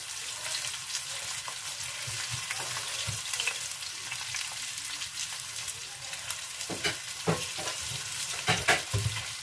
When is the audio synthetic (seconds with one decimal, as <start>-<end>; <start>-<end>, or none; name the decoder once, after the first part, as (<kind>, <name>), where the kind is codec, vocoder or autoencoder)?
none